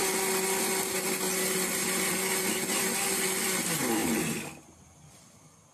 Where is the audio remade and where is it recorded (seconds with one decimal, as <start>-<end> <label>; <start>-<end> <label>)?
0.0-5.7 recorded